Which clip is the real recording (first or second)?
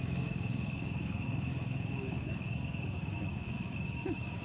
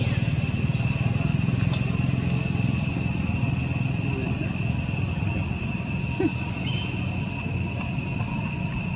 second